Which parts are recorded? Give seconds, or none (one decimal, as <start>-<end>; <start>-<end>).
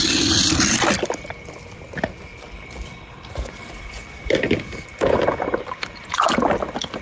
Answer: 2.3-5.6